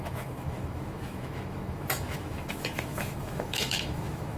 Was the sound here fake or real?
fake